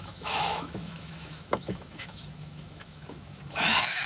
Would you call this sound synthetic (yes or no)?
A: yes